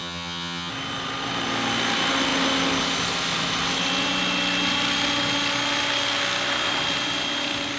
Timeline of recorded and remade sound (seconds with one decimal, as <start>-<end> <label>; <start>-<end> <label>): 0.0-0.7 remade; 0.7-7.8 recorded